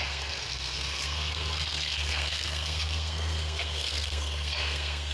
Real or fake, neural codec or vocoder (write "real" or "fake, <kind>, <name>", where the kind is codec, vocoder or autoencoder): fake, codec, SNAC